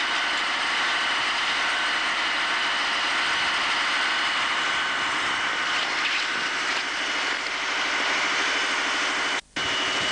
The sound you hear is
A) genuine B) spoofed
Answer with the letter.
A